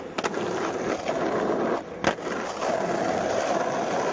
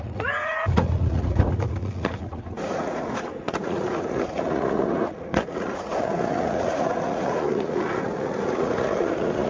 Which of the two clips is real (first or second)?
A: first